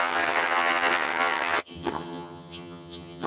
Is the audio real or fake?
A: fake